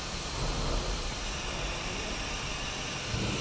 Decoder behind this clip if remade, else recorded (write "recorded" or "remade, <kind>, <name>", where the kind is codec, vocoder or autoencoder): recorded